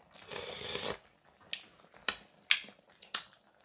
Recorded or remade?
recorded